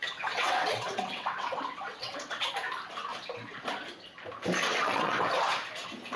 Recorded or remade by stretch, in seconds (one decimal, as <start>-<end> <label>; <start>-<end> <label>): 0.0-2.5 remade; 2.5-4.6 recorded; 4.6-5.2 remade; 5.2-6.2 recorded